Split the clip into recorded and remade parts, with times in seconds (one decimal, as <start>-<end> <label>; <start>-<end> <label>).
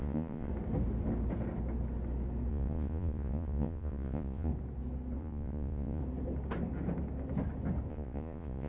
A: 0.0-0.5 remade; 0.5-2.5 recorded; 2.5-4.5 remade; 4.5-5.2 recorded; 5.2-6.0 remade; 6.0-7.9 recorded; 7.9-8.7 remade